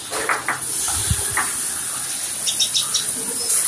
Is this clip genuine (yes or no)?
yes